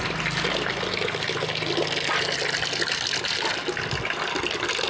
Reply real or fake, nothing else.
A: real